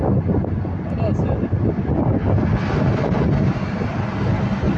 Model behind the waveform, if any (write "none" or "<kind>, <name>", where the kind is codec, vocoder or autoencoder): none